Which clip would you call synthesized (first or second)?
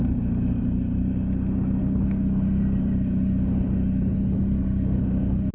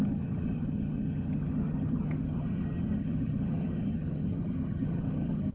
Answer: second